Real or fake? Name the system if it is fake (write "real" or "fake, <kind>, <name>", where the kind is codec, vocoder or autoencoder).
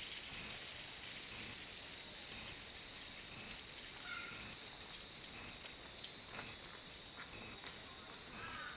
real